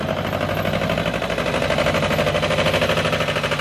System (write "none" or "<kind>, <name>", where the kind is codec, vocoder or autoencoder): none